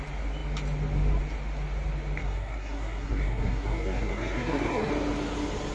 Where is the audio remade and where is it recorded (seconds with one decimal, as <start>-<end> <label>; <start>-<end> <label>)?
0.0-2.2 recorded; 2.2-4.9 remade; 4.9-5.7 recorded